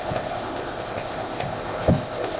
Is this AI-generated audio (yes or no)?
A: yes